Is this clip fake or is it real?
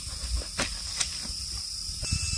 real